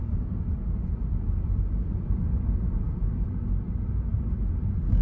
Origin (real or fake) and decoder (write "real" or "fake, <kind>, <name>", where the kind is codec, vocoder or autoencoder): real